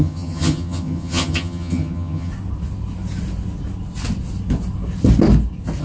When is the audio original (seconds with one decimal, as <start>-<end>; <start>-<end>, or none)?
2.3-5.8